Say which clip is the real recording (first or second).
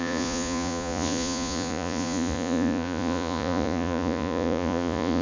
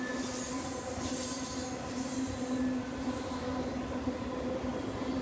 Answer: second